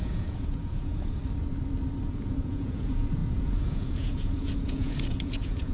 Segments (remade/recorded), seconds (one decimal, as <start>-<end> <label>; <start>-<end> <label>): 0.0-1.2 remade; 1.2-2.0 recorded; 2.0-5.7 remade